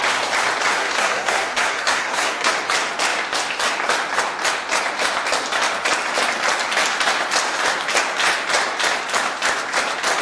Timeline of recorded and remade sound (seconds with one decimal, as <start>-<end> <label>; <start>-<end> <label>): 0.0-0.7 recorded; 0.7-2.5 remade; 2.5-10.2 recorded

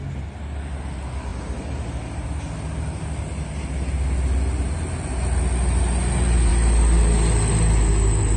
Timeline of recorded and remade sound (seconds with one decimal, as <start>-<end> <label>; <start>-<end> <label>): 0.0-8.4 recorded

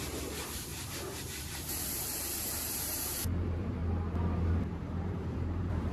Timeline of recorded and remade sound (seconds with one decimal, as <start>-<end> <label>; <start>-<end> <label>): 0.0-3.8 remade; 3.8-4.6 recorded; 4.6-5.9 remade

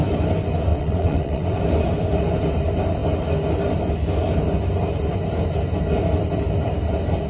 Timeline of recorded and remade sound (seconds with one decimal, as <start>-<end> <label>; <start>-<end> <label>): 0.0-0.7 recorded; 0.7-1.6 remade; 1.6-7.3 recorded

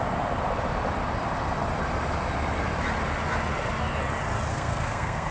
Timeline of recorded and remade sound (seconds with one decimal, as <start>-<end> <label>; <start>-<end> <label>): 0.0-4.5 recorded; 4.5-5.3 remade

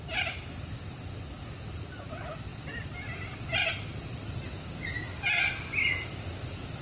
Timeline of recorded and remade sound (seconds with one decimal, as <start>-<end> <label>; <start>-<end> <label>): 0.0-6.8 recorded